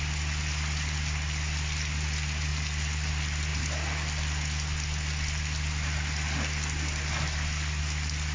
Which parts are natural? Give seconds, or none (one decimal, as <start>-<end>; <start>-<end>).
0.0-8.3